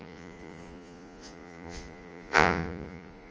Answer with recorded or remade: remade